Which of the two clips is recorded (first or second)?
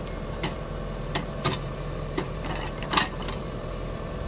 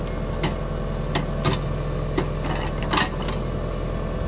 second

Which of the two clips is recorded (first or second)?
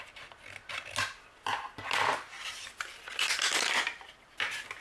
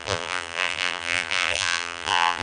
first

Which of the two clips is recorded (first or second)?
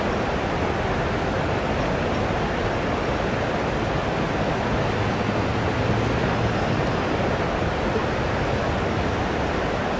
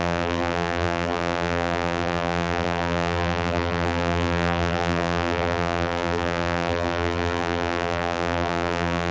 first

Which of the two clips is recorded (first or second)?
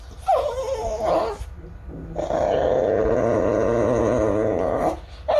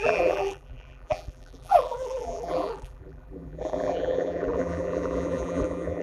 first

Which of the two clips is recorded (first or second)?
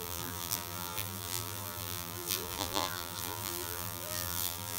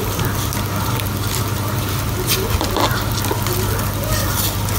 second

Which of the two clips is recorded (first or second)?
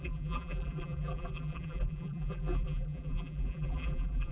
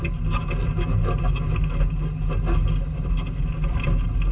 second